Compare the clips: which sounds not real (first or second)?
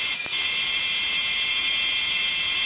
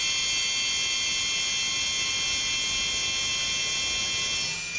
first